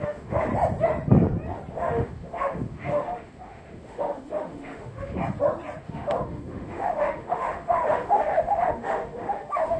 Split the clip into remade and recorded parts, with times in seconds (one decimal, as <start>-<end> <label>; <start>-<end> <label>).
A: 0.0-0.5 remade; 0.5-1.7 recorded; 1.7-5.2 remade; 5.2-5.8 recorded; 5.8-9.8 remade